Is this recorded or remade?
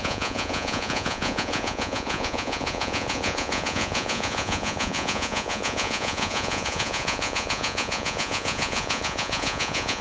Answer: remade